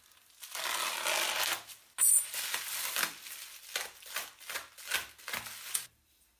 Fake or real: real